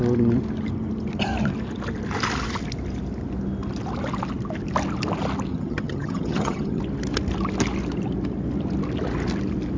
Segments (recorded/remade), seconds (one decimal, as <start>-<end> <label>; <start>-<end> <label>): 0.0-5.5 recorded; 5.5-6.8 remade; 6.8-9.8 recorded